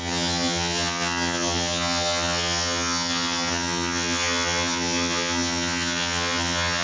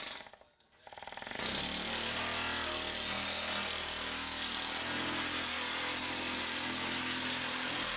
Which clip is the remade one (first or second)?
first